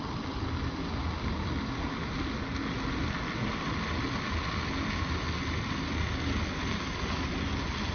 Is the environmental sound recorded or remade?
recorded